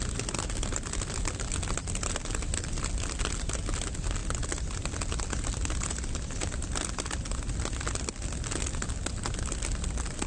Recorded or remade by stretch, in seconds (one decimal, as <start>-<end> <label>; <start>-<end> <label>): 0.0-10.3 recorded